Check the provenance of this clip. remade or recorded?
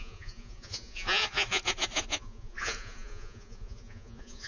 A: remade